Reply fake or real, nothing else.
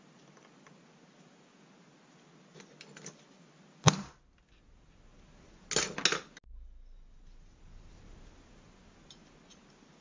real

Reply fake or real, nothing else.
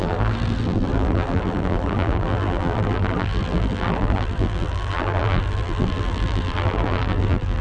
fake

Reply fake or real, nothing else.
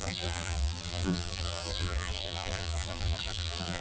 fake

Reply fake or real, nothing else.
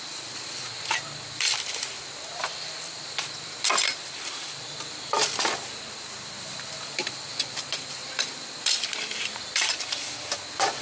fake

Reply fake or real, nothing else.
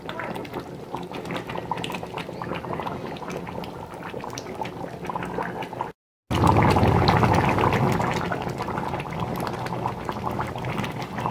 real